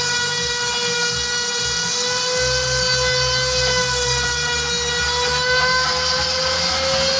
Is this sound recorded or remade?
recorded